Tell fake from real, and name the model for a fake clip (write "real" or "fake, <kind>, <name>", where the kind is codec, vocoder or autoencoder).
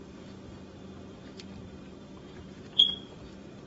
fake, vocoder, BigVGAN v2